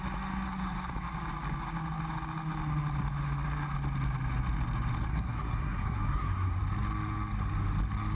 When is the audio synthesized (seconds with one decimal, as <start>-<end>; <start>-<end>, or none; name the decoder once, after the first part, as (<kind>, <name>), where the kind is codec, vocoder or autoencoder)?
5.1-6.6 (codec, SNAC)